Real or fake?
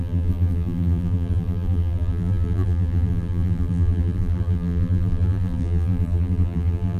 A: fake